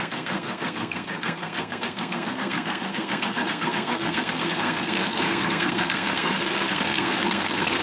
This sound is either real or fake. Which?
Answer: fake